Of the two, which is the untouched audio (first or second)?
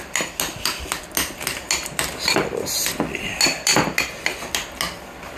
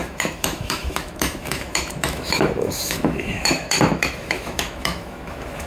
first